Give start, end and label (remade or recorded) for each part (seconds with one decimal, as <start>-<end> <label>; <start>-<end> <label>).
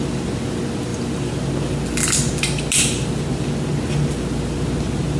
0.0-5.2 recorded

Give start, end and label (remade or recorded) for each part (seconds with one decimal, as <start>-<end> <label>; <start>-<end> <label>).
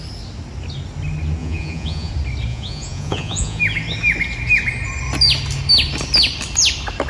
0.0-1.4 recorded; 1.4-2.1 remade; 2.1-2.5 recorded; 2.5-3.6 remade; 3.6-7.1 recorded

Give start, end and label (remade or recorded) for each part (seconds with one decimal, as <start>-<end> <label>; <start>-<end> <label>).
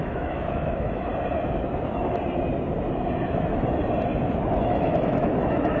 0.0-1.1 remade; 1.1-4.6 recorded; 4.6-5.8 remade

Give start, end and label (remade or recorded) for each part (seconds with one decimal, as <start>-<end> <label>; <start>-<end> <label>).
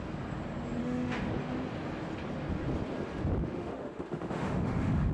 0.0-0.8 recorded; 0.8-1.3 remade; 1.3-3.4 recorded; 3.4-5.1 remade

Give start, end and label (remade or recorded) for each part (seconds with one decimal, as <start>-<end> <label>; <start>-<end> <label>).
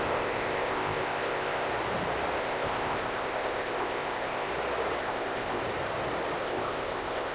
0.0-1.7 remade; 1.7-2.4 recorded; 2.4-4.5 remade; 4.5-5.0 recorded; 5.0-5.6 remade; 5.6-6.4 recorded; 6.4-7.3 remade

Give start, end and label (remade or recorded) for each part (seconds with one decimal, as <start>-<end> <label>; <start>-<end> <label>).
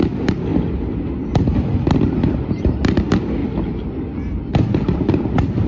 0.0-5.7 recorded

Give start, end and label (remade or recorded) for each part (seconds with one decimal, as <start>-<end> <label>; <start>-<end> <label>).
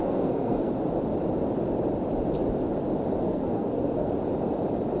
0.0-0.7 remade; 0.7-3.2 recorded; 3.2-4.1 remade; 4.1-5.0 recorded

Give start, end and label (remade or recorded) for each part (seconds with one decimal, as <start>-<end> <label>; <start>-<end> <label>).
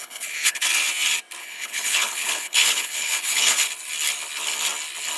0.0-0.6 remade; 0.6-1.4 recorded; 1.4-3.7 remade; 3.7-5.2 recorded